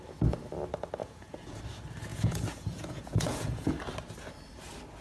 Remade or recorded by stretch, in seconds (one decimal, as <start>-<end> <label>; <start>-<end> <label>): 0.0-1.0 recorded; 1.0-1.6 remade; 1.6-2.1 recorded; 2.1-3.8 remade; 3.8-5.0 recorded